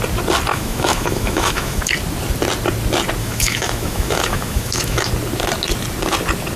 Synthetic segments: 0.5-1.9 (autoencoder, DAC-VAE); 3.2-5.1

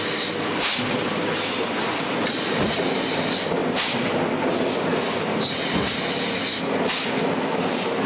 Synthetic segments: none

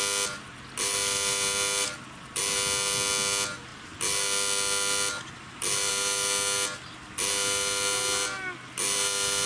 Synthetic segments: none

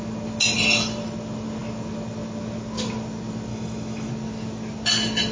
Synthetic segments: 3.5-4.1 (autoencoder, DAC-VAE)